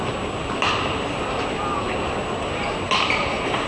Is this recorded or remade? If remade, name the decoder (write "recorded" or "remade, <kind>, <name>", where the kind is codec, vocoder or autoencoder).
recorded